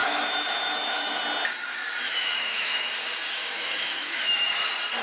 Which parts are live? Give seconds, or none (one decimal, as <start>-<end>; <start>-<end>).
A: 1.2-2.1; 2.9-3.4; 4.2-5.0